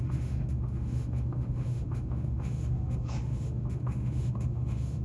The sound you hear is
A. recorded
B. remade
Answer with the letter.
B